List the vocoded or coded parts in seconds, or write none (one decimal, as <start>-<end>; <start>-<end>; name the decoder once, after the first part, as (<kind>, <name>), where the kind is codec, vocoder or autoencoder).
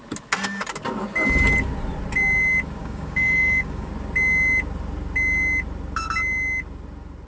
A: 2.8-3.9 (codec, DAC)